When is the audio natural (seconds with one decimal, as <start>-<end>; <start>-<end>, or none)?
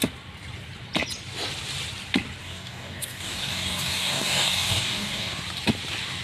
0.0-2.4; 5.4-6.2